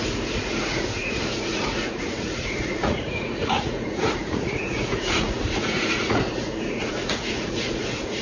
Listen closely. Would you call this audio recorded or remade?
remade